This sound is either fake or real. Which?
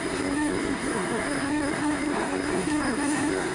fake